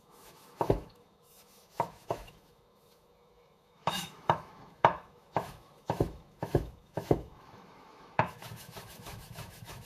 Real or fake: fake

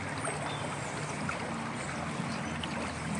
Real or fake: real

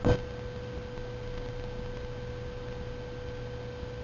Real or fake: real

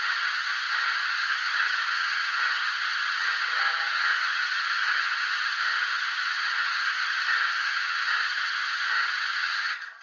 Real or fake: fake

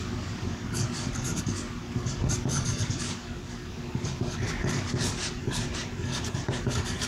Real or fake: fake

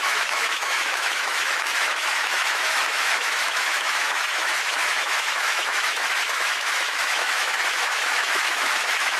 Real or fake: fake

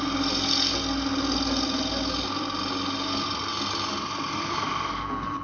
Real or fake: real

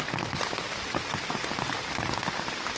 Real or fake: real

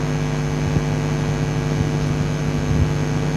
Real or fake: real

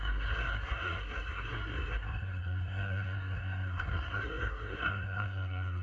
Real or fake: fake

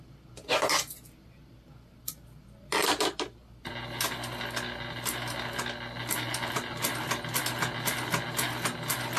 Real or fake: real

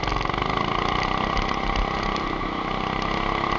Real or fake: real